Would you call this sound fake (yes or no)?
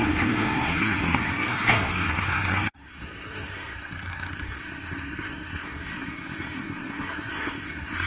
yes